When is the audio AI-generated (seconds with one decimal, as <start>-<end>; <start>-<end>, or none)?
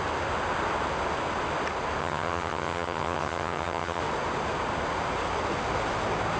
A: 2.0-4.0